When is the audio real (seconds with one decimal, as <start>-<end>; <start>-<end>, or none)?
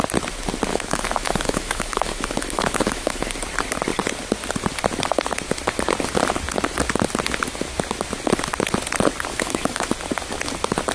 0.0-0.7; 3.3-9.3; 9.9-10.9